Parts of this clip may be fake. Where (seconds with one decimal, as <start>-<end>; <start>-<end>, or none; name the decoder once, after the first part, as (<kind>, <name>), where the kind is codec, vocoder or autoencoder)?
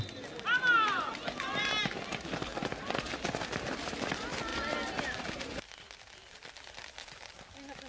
none